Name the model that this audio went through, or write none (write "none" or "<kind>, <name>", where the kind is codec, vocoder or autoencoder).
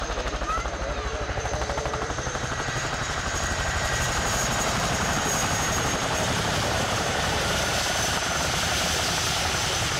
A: vocoder, BigVGAN v2